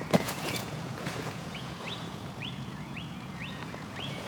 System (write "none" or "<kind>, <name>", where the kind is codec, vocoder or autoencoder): vocoder, Vocos